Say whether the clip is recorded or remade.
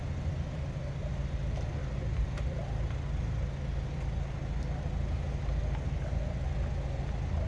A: recorded